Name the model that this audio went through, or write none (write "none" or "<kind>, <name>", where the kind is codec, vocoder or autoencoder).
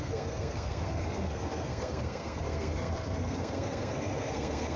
codec, SNAC